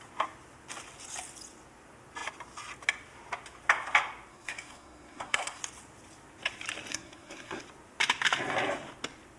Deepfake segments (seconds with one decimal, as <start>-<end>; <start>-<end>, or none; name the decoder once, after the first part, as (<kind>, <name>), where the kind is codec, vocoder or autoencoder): 4.3-5.6 (codec, SNAC); 6.9-7.6